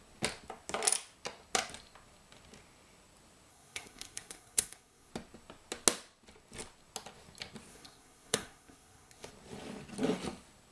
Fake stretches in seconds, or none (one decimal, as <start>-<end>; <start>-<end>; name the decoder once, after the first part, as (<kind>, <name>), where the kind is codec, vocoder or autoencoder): 3.5-5.1 (codec, SNAC); 7.7-9.3